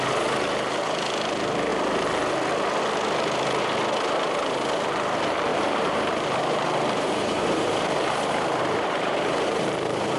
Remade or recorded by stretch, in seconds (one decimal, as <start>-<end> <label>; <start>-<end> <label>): 0.0-5.5 recorded; 5.5-10.2 remade